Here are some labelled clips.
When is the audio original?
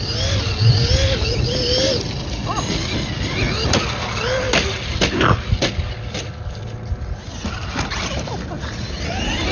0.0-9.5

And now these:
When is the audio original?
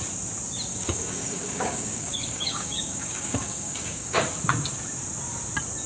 0.0-0.7; 4.2-5.9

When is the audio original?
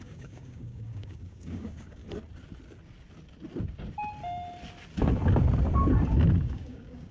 2.0-6.3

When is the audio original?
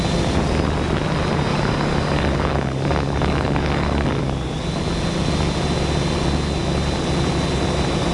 0.0-1.5; 4.2-8.1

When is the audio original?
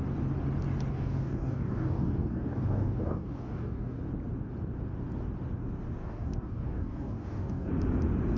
0.0-0.9; 4.0-6.0; 7.7-8.4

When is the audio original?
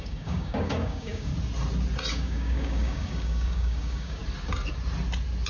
1.3-2.1; 4.2-5.5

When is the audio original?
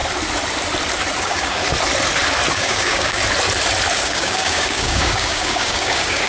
0.0-1.2; 1.6-2.5; 3.2-3.9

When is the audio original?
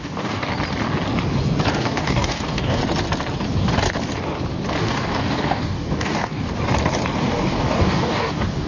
0.4-1.8; 2.8-4.8; 6.5-7.2